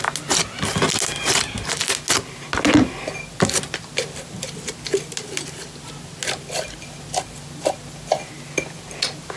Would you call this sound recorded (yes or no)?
yes